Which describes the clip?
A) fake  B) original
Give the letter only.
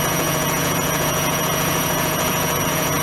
A